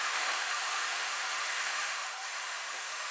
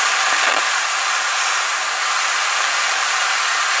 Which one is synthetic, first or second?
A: first